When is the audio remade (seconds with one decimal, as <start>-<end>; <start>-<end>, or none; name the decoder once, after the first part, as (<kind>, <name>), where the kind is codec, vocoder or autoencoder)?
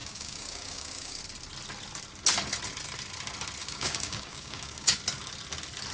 0.0-1.2 (codec, DAC); 3.6-5.0